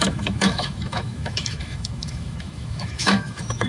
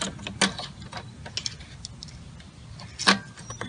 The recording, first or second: second